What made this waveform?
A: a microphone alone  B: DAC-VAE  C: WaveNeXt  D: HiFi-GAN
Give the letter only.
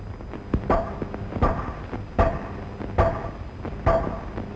A